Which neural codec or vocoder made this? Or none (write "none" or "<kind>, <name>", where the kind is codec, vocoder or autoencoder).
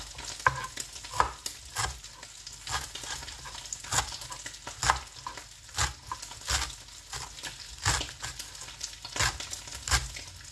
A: none